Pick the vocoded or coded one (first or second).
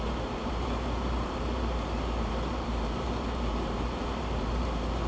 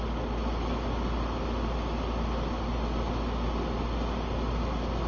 first